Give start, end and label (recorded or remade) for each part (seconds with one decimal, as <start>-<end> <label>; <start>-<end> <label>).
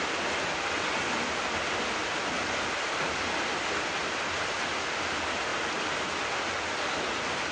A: 0.0-7.5 recorded